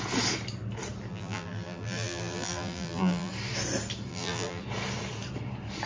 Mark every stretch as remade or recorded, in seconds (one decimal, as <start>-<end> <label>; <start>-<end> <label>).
0.0-1.1 recorded; 1.1-3.3 remade; 3.3-4.1 recorded; 4.1-4.6 remade; 4.6-5.9 recorded